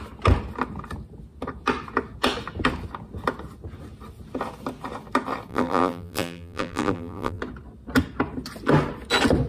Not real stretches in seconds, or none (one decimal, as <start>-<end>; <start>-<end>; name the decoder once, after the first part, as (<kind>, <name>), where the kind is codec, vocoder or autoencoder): 5.5-7.4 (vocoder, BigVGAN v2)